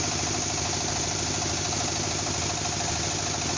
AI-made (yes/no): no